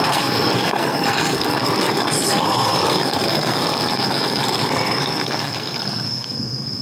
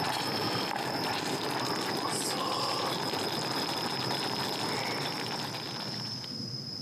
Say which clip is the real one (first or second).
second